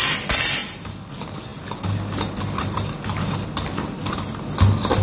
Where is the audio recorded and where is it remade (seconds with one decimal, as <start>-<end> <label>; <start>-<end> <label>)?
0.0-5.0 recorded